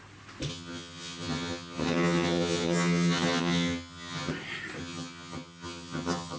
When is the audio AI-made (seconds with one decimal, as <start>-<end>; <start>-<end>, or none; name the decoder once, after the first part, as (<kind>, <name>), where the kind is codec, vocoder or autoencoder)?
0.5-4.3 (vocoder, HiFi-GAN); 4.8-6.4